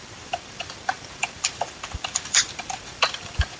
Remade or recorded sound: remade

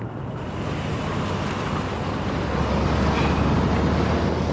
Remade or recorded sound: recorded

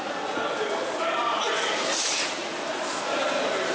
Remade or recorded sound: recorded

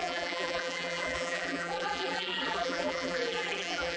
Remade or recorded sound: remade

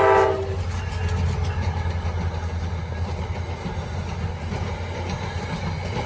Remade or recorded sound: recorded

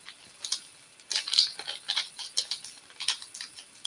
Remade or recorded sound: recorded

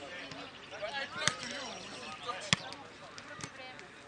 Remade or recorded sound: recorded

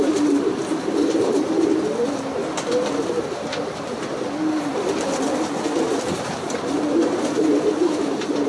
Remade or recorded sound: remade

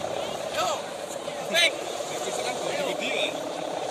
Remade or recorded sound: remade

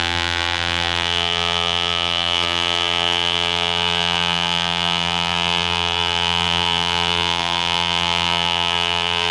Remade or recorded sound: remade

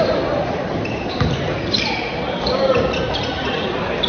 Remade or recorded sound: remade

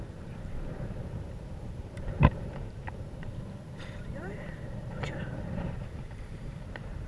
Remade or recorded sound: remade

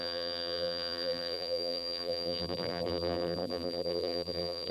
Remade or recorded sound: remade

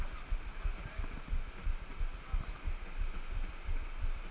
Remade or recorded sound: recorded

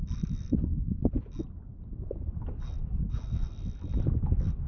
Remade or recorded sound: recorded